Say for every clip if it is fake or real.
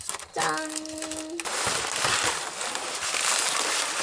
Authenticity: real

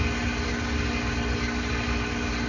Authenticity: real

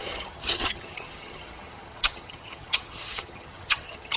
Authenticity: fake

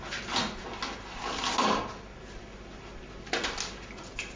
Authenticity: real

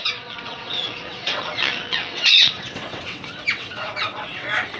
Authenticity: fake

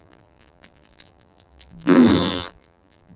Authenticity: fake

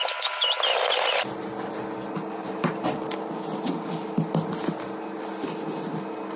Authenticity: real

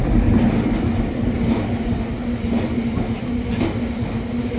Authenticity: real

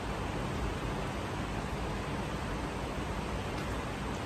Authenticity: real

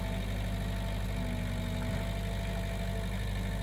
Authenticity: real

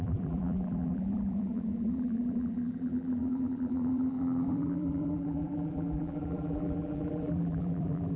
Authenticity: fake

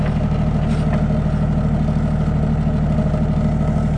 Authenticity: real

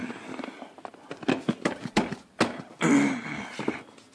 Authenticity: real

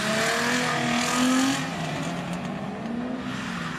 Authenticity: real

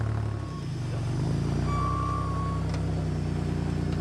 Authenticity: real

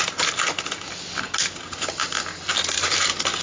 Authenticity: real